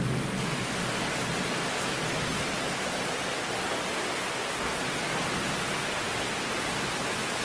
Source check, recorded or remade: recorded